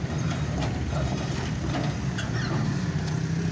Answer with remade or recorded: remade